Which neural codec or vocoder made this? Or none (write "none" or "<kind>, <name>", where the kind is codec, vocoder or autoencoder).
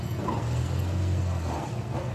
codec, SNAC